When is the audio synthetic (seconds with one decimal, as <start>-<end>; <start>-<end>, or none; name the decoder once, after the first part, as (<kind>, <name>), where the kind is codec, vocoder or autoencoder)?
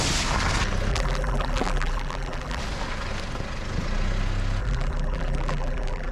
0.9-2.6 (vocoder, BigVGAN v2); 4.6-6.1